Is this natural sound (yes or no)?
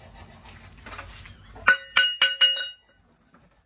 yes